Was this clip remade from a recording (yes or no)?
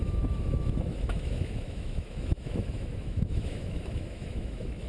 yes